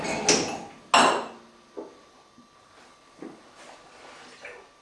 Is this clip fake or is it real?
real